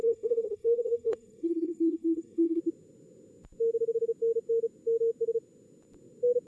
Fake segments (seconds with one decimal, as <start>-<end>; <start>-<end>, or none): 0.0-2.6